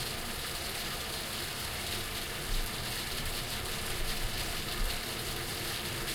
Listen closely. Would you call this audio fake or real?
fake